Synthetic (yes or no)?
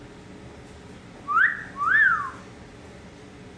no